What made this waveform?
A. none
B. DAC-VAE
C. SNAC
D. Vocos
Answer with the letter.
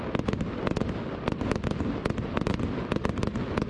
A